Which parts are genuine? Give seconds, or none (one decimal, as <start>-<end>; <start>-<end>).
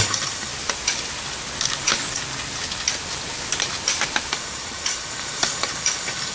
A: 0.5-4.3